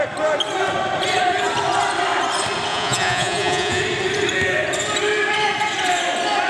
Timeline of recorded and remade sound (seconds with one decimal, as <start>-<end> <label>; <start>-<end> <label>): 0.0-2.7 recorded; 2.7-3.8 remade; 3.8-6.5 recorded